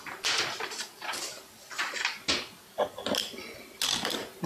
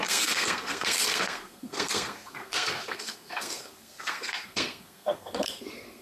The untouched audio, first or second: first